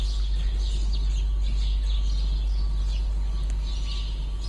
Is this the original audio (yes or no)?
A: yes